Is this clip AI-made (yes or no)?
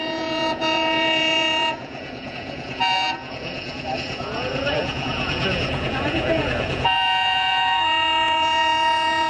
yes